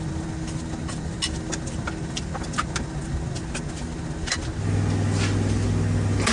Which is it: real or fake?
real